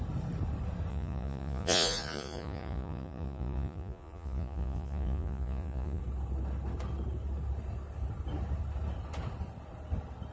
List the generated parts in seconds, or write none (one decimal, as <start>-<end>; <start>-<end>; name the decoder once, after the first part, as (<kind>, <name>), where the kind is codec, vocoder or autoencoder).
0.9-6.0 (vocoder, Vocos)